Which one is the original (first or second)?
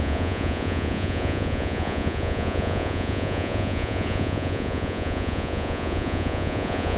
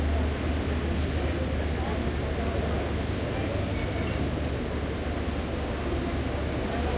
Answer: second